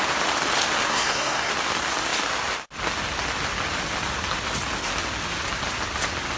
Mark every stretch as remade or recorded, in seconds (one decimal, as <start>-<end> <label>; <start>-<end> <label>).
0.0-0.9 recorded; 0.9-1.5 remade; 1.5-6.4 recorded